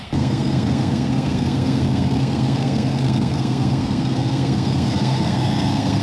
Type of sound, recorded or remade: remade